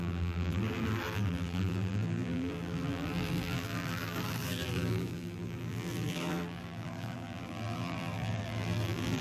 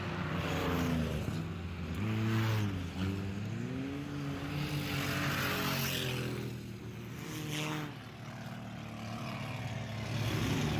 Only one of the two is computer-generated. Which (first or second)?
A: first